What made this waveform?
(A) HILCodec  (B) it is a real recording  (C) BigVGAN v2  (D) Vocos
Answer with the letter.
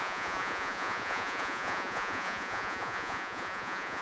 D